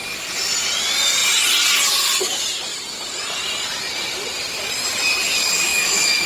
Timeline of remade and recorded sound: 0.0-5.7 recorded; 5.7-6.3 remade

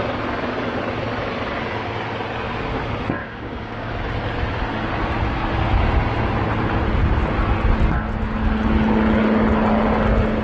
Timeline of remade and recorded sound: 0.0-3.2 recorded; 3.2-3.9 remade; 3.9-10.4 recorded

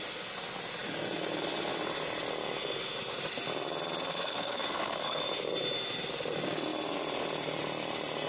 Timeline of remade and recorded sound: 0.0-4.1 recorded; 4.1-5.2 remade; 5.2-8.3 recorded

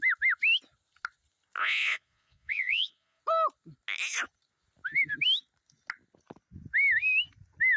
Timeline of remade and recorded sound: 0.0-1.6 recorded; 1.6-3.2 remade; 3.2-7.8 recorded

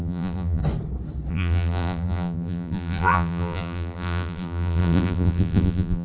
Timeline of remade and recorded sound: 0.0-0.6 remade; 0.6-1.3 recorded; 1.3-6.0 remade

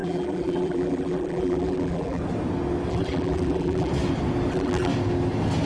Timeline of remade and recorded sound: 0.0-2.2 remade; 2.2-2.9 recorded; 2.9-3.9 remade; 3.9-4.5 recorded; 4.5-4.9 remade; 4.9-5.7 recorded